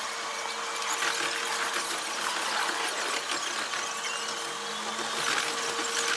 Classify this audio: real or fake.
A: real